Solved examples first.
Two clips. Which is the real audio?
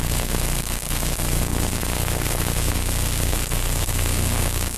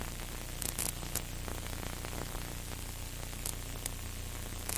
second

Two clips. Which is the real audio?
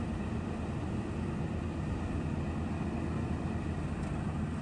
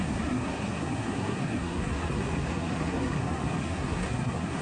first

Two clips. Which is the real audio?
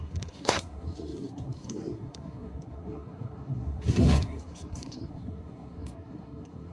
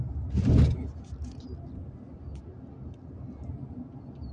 second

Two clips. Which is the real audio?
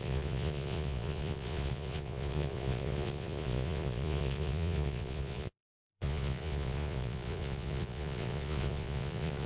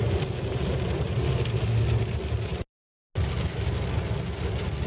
second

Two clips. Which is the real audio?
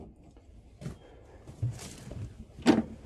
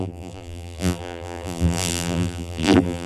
first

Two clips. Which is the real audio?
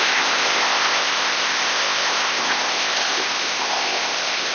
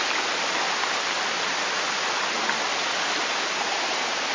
second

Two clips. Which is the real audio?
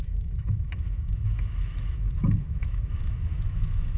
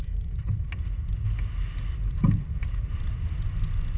second